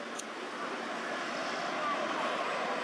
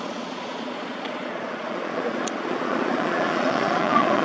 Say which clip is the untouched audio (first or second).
first